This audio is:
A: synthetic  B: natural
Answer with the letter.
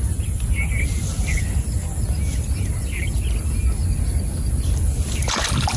B